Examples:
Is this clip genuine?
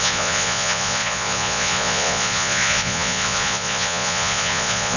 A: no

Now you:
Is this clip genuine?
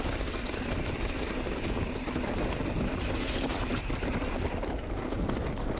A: yes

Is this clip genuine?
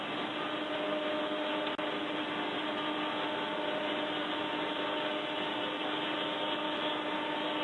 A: yes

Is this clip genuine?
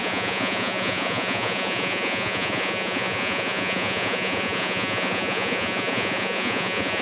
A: no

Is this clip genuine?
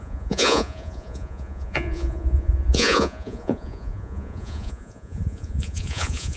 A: no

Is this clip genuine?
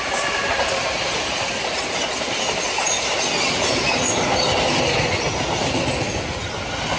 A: yes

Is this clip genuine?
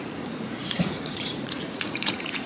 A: no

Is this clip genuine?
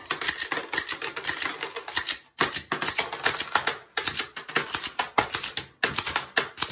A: yes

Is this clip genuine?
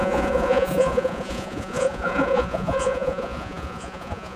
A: no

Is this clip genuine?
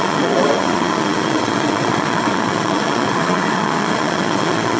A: no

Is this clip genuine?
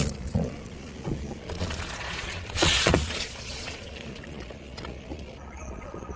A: no